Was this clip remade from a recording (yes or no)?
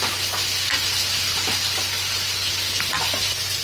no